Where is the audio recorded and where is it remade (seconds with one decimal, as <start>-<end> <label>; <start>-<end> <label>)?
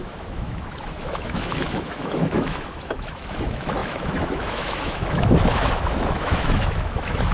0.0-7.3 remade